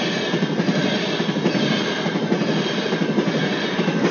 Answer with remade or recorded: recorded